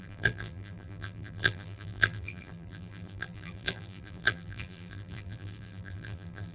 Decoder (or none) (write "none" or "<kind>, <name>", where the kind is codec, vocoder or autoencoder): vocoder, BigVGAN v2